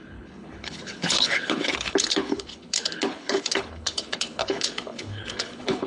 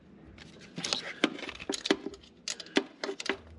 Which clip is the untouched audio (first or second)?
second